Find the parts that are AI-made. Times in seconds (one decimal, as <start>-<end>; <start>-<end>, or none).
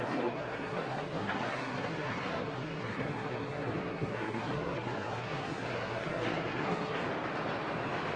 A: 0.0-7.0